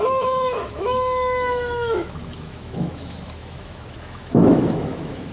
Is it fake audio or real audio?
fake